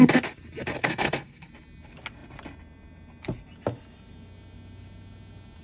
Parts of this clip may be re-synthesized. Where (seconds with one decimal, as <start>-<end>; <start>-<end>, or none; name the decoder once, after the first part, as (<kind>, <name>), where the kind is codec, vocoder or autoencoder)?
0.8-1.5 (codec, SNAC)